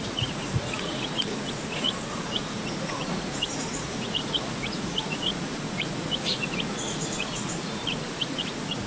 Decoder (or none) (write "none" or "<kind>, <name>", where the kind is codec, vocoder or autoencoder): vocoder, Vocos